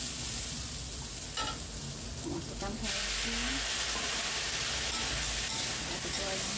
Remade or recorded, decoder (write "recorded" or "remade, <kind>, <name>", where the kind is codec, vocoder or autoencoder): recorded